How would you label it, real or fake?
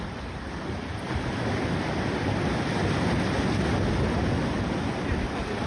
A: real